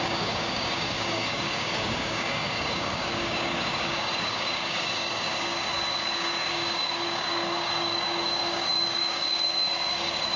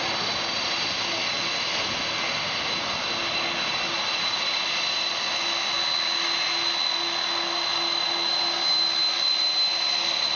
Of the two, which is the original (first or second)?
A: second